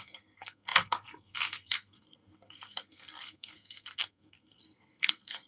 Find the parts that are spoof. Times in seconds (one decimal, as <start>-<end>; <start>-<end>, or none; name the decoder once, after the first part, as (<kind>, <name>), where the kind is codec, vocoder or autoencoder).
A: 0.0-5.5 (codec, SNAC)